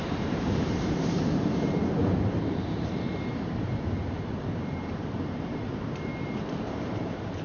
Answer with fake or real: fake